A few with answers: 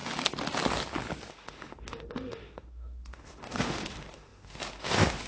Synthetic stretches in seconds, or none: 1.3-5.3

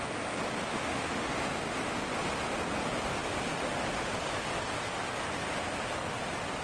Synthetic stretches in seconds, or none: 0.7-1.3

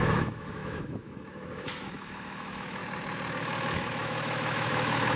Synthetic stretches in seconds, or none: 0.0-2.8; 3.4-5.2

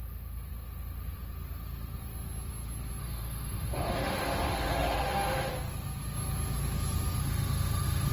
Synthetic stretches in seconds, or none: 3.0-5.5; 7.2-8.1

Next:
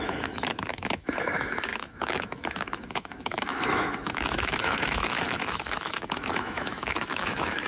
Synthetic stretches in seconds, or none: 0.0-7.7